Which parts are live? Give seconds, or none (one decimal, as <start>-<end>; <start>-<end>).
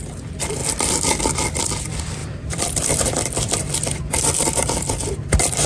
0.0-2.2